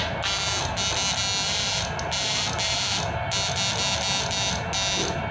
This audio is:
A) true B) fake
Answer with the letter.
A